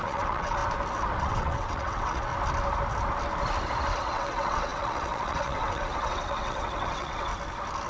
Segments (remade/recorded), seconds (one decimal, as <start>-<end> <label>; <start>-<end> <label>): 0.0-0.6 remade; 0.6-1.2 recorded; 1.2-2.3 remade; 2.3-4.0 recorded; 4.0-7.3 remade; 7.3-7.9 recorded